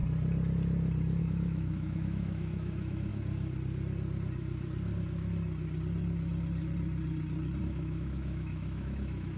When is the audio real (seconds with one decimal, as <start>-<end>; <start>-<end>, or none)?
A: 0.0-1.2; 3.1-7.6